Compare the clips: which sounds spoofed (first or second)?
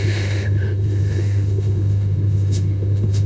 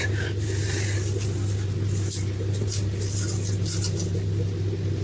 first